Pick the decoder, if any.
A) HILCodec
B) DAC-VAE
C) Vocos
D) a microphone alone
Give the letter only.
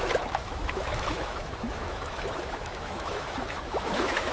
B